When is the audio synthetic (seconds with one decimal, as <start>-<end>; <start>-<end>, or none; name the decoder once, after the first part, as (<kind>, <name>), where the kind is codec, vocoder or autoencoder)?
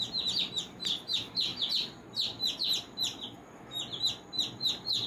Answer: none